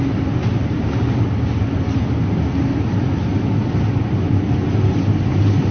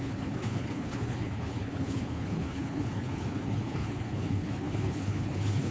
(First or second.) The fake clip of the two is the second